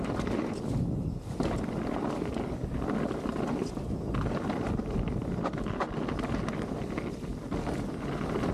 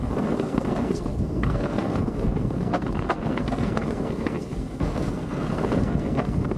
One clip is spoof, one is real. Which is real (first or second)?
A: first